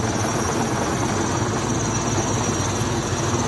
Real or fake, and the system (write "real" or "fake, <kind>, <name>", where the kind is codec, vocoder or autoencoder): real